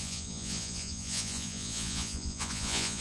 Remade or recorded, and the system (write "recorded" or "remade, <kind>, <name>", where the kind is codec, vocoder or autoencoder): remade, vocoder, Vocos